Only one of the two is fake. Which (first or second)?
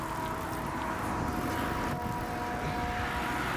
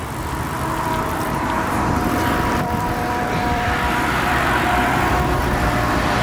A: second